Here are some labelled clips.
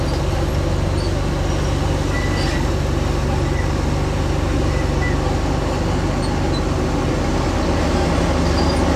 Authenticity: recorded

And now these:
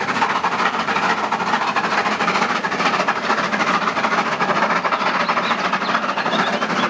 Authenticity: recorded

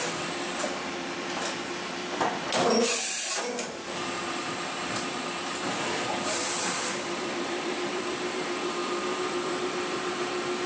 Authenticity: remade